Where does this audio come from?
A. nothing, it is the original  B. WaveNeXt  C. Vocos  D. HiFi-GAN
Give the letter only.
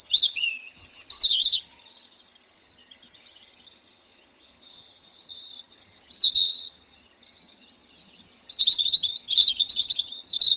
D